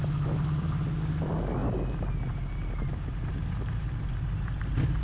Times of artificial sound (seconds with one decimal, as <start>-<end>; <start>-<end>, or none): none

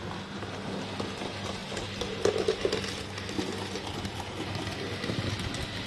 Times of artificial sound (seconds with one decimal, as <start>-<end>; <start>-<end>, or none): none

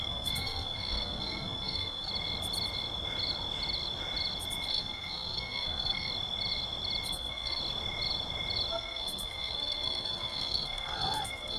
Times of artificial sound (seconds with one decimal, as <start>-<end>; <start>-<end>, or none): 0.0-2.1; 4.7-6.1; 7.1-7.6; 8.7-11.6

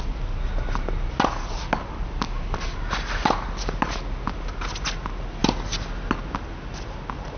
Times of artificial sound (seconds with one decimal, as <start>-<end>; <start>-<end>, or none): none

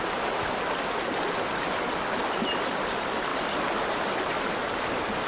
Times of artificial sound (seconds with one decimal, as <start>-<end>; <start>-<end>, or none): none

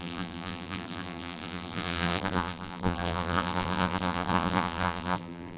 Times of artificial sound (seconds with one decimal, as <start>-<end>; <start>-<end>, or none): 0.0-5.6